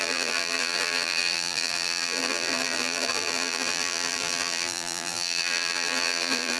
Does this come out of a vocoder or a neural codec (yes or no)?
yes